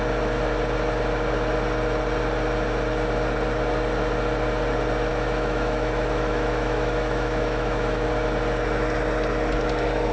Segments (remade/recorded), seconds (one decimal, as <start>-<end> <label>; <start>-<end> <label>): 0.0-5.1 recorded; 5.1-8.1 remade; 8.1-10.1 recorded